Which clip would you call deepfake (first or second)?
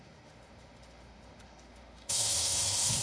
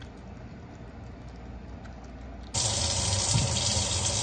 first